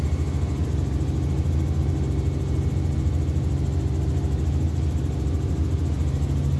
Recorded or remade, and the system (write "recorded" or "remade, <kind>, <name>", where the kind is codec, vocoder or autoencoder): recorded